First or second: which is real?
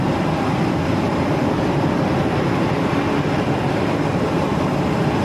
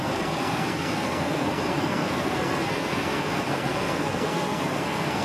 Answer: first